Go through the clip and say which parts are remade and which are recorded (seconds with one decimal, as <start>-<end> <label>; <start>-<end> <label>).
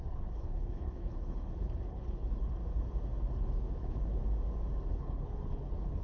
0.0-2.6 remade; 2.6-3.3 recorded; 3.3-4.2 remade; 4.2-4.9 recorded; 4.9-6.0 remade